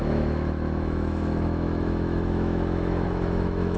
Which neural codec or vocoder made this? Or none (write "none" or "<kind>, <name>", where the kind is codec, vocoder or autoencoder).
autoencoder, DAC-VAE